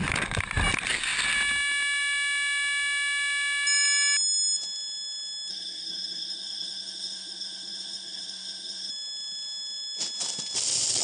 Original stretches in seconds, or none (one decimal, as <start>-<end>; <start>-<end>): 0.0-5.5; 8.9-11.0